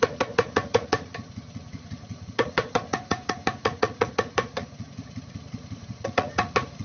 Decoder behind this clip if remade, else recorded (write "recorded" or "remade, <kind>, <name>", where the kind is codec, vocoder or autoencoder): remade, vocoder, Vocos